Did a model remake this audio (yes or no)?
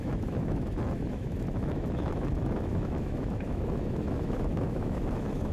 yes